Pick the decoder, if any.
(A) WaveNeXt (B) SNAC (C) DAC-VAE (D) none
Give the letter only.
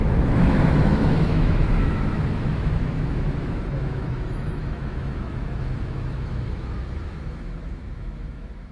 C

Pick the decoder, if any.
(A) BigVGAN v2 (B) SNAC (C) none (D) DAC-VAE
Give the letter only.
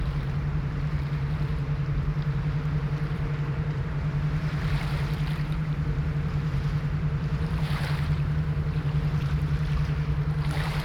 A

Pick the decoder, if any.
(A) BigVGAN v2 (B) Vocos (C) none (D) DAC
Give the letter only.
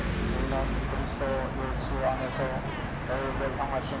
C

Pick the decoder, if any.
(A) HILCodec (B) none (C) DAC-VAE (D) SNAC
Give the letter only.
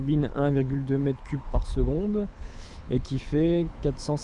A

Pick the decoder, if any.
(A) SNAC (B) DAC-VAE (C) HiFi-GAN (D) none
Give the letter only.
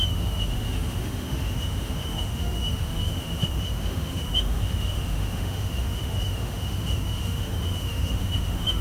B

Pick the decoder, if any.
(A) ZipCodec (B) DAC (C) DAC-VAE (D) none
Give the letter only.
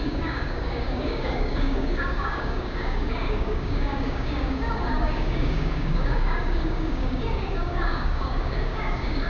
B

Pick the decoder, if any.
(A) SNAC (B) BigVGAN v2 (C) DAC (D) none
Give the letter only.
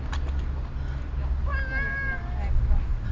D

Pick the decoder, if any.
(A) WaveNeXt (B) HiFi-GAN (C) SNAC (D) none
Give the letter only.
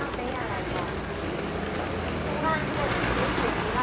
D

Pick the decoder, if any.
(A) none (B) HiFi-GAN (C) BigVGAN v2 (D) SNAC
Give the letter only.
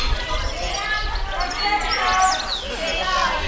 A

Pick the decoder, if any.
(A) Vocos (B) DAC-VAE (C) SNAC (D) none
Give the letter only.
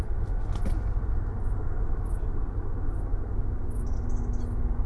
D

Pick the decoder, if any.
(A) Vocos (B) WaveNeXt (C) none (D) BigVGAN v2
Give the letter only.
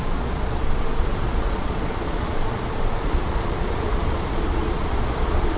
A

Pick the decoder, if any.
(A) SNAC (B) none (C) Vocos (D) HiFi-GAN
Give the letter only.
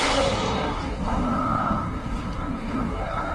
A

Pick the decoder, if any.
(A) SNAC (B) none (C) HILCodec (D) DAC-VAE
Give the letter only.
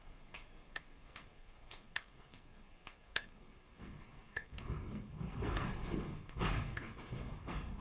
A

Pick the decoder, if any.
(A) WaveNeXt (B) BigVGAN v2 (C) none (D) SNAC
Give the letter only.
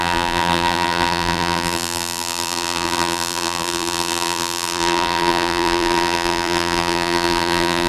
B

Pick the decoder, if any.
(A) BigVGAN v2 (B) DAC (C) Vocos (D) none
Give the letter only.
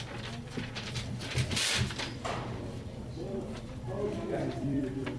A